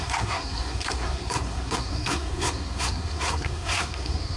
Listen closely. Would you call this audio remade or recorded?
remade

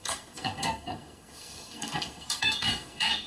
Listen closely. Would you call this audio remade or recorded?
remade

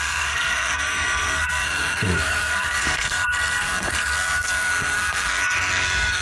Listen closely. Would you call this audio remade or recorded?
remade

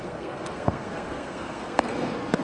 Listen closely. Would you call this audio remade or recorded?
remade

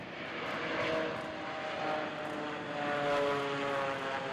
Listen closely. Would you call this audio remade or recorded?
recorded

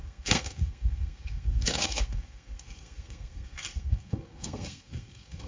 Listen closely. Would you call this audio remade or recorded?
remade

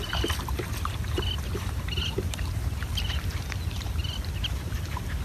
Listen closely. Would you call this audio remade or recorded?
recorded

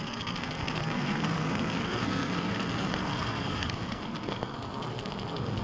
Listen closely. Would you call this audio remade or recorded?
remade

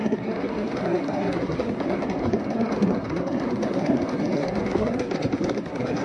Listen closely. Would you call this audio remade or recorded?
remade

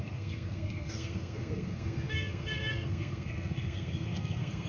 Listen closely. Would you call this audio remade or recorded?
remade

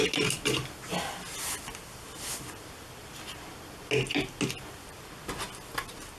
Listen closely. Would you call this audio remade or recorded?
recorded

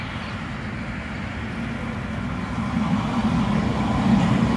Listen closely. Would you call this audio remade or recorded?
recorded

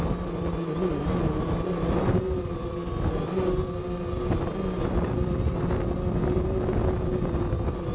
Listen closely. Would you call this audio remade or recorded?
recorded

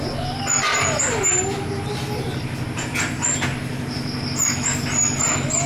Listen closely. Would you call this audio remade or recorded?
recorded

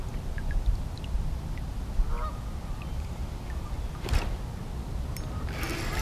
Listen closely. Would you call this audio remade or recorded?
recorded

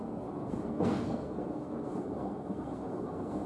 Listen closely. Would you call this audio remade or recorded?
remade